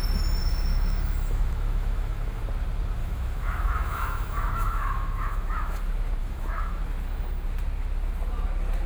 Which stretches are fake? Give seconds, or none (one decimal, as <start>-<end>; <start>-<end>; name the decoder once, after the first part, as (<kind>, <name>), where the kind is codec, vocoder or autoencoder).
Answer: 0.4-2.4 (autoencoder, DAC-VAE); 3.0-5.8; 6.2-6.8